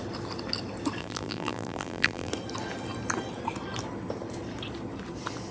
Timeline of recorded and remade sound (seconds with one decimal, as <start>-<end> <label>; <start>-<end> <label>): 0.0-1.0 recorded; 1.0-2.3 remade; 2.3-5.5 recorded